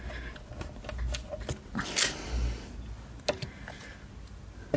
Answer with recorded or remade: recorded